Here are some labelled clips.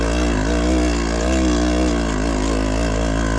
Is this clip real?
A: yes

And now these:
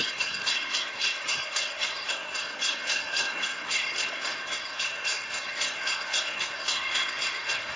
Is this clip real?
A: no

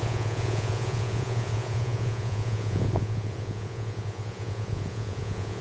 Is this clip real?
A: no